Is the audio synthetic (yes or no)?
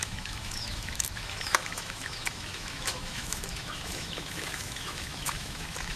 yes